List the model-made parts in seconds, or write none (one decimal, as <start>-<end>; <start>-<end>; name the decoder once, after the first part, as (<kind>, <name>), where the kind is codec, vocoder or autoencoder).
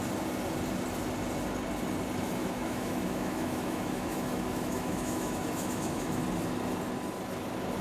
2.4-6.2 (autoencoder, DAC-VAE)